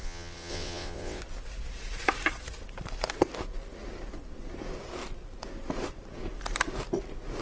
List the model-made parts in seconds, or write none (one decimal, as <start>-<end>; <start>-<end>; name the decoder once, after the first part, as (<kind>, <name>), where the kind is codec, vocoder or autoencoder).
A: 0.0-1.2 (vocoder, WaveNeXt)